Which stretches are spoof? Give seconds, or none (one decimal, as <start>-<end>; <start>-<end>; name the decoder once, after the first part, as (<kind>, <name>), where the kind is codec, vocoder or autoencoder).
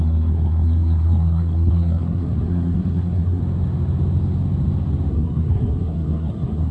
0.0-3.4 (codec, SNAC); 5.1-6.7